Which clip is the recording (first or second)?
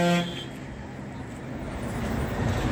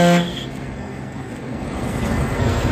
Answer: first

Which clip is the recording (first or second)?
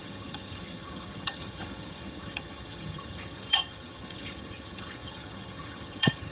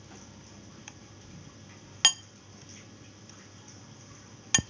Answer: second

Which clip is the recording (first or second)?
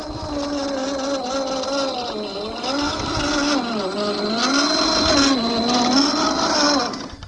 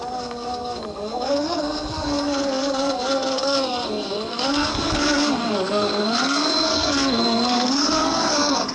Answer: first